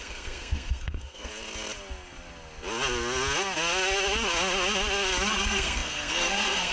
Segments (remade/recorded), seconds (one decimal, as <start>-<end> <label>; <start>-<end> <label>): 0.0-1.3 remade; 1.3-5.3 recorded; 5.3-6.7 remade